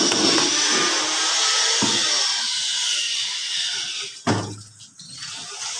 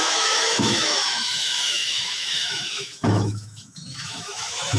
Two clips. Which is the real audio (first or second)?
first